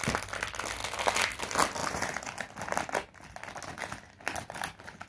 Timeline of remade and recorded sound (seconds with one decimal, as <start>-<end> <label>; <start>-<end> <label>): 0.0-5.1 recorded